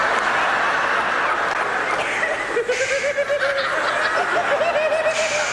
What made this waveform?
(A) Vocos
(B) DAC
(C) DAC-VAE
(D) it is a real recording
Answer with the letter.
D